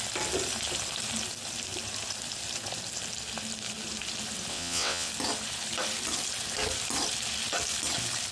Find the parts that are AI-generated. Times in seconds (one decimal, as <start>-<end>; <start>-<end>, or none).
4.5-5.1